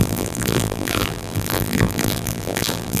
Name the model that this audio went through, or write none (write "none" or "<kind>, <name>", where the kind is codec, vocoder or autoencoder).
vocoder, BigVGAN v2